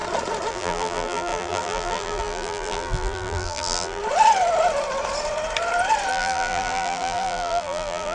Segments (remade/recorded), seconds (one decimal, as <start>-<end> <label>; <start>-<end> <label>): 0.0-0.5 recorded; 0.5-4.0 remade; 4.0-6.1 recorded; 6.1-8.1 remade